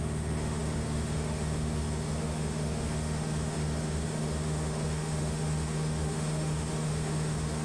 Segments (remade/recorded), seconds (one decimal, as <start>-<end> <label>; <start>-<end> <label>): 0.0-7.6 remade